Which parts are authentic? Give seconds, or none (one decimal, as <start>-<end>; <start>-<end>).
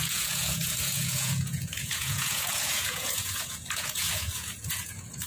none